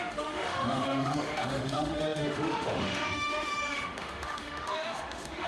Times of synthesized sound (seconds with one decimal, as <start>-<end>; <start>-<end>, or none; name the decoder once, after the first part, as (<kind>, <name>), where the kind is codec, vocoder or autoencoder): 0.0-5.5 (autoencoder, DAC-VAE)